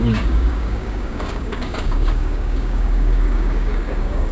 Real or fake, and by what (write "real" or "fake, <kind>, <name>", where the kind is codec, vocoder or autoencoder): fake, codec, DAC